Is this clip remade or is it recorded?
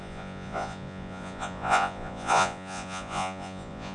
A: remade